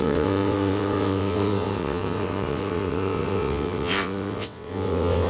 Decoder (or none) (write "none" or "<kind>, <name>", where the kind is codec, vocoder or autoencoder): vocoder, WaveNeXt